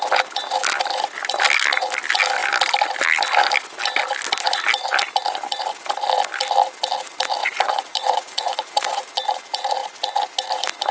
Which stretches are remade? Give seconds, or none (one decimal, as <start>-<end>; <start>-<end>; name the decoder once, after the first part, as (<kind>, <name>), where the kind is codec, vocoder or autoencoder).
7.4-9.1 (vocoder, Vocos)